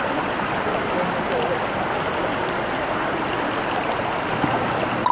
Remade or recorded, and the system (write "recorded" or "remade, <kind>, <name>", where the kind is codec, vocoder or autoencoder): recorded